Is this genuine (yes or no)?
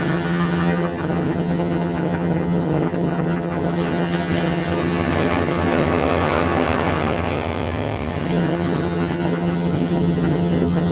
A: no